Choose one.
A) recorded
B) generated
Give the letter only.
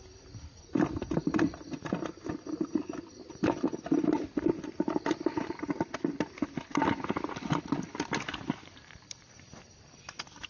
A